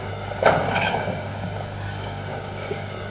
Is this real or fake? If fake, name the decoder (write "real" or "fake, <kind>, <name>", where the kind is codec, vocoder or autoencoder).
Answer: fake, codec, DAC